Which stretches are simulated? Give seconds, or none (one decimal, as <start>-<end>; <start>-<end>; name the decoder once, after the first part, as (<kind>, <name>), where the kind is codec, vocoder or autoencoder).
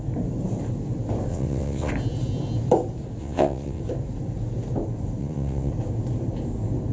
1.3-1.9 (vocoder, WaveNeXt); 3.2-3.8; 5.2-5.7